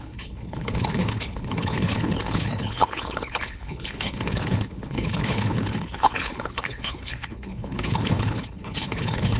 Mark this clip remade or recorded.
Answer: remade